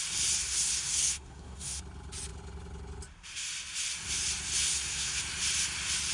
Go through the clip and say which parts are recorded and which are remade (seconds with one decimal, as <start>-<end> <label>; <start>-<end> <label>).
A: 0.0-0.4 recorded; 0.4-1.8 remade; 1.8-4.6 recorded; 4.6-5.2 remade; 5.2-6.1 recorded